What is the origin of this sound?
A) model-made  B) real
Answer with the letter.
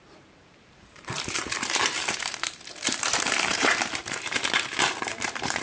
A